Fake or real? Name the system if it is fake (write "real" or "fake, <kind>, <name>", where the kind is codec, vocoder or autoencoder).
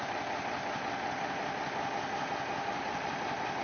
real